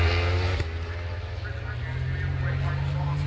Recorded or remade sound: recorded